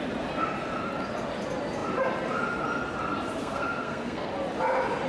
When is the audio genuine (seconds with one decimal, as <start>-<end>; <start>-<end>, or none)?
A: 0.0-3.4; 4.3-5.1